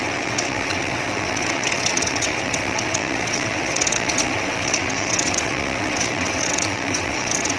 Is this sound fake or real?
fake